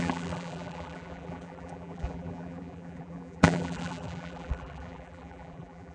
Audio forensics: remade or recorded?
remade